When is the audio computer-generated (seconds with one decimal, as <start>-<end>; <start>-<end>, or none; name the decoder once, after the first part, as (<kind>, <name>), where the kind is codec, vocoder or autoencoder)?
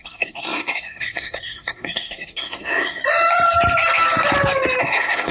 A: 0.0-3.0 (codec, SNAC); 4.8-5.3